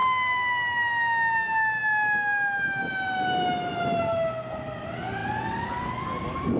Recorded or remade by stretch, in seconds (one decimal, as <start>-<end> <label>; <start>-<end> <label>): 0.0-6.6 recorded